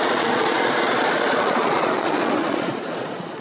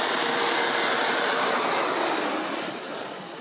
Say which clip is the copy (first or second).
first